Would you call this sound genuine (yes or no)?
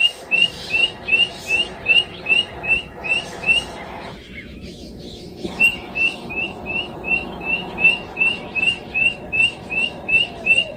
no